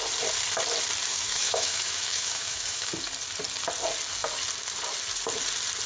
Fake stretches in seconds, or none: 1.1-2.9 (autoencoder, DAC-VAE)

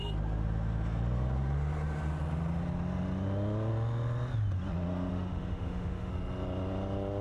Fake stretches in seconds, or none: 5.1-6.1 (autoencoder, DAC-VAE)

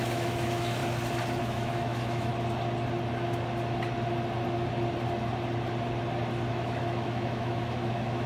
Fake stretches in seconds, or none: 0.0-0.8 (autoencoder, DAC-VAE); 1.4-2.3; 6.5-8.3